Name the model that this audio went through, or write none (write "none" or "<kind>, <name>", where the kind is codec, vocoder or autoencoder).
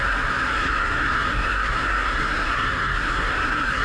codec, SNAC